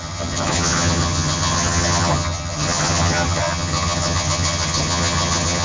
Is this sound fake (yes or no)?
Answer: yes